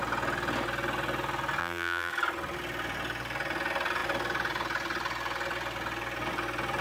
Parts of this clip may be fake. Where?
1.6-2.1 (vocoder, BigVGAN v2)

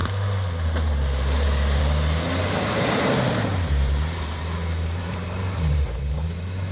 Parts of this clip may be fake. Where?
3.5-6.7 (vocoder, BigVGAN v2)

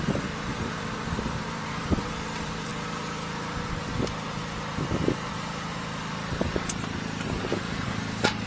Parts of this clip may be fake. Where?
0.0-2.7 (vocoder, BigVGAN v2); 5.3-8.5

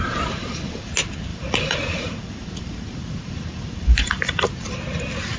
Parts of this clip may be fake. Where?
0.4-0.9 (vocoder, BigVGAN v2); 1.3-4.5

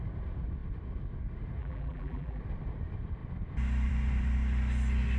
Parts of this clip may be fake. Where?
1.6-2.4 (vocoder, BigVGAN v2)